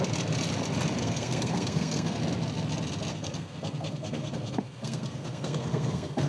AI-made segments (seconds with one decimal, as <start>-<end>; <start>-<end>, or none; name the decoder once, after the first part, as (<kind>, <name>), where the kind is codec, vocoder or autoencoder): 1.0-2.2 (codec, SNAC); 3.1-6.3